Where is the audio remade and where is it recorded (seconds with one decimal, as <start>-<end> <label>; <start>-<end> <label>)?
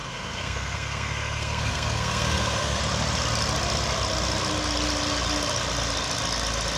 0.0-2.8 remade; 2.8-6.8 recorded